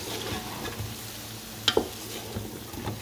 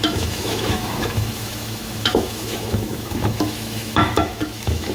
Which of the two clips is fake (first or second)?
second